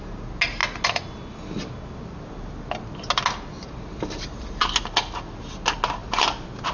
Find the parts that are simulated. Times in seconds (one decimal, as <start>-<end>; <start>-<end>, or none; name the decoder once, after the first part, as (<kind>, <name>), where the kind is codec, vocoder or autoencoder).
6.0-6.7 (vocoder, BigVGAN v2)